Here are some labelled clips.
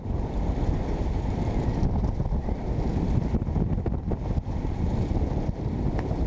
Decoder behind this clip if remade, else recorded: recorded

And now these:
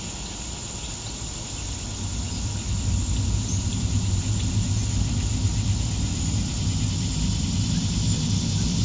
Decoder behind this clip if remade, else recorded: recorded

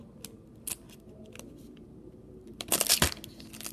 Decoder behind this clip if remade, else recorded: recorded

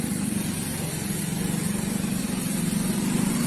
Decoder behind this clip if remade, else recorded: recorded